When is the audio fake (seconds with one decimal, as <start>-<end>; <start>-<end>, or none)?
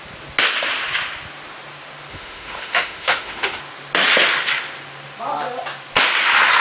2.1-3.6